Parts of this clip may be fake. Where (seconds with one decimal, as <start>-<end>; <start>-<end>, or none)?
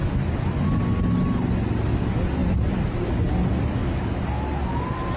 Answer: 2.4-3.1; 3.8-5.2